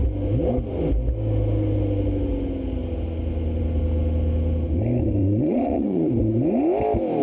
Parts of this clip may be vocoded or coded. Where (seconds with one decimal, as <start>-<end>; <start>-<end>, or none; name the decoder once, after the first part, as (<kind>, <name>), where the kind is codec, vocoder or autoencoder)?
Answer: 5.2-6.1 (vocoder, Vocos)